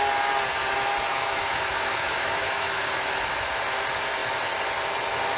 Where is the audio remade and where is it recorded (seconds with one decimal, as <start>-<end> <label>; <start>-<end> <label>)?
0.0-1.1 recorded; 1.1-2.8 remade; 2.8-5.4 recorded